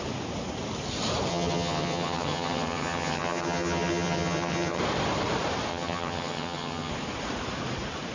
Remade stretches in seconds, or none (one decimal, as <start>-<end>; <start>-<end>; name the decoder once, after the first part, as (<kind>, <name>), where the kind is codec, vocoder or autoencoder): 1.3-4.8 (vocoder, HiFi-GAN); 5.7-6.9